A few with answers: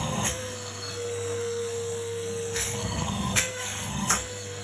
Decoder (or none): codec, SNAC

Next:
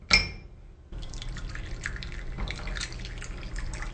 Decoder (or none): none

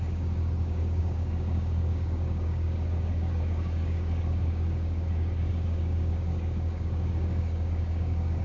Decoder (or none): codec, DAC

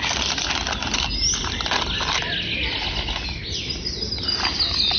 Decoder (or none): none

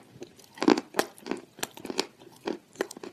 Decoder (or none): none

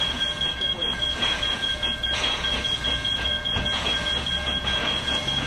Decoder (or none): vocoder, Vocos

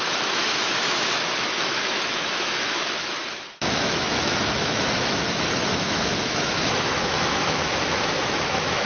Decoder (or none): autoencoder, DAC-VAE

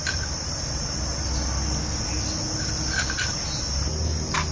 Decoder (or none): none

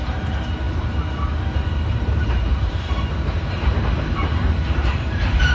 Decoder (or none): vocoder, BigVGAN v2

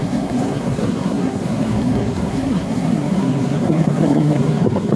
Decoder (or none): codec, SNAC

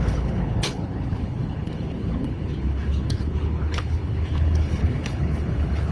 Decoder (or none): codec, HILCodec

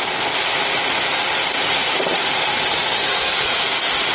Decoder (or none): none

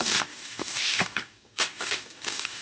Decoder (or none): codec, DAC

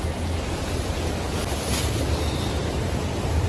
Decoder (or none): none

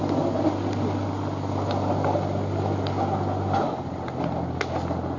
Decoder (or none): none